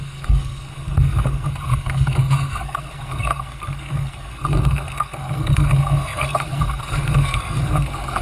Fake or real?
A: fake